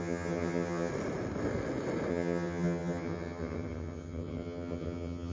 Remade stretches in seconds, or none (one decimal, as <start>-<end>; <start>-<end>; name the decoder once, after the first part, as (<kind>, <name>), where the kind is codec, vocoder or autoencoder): 0.0-0.9 (vocoder, HiFi-GAN); 2.1-5.3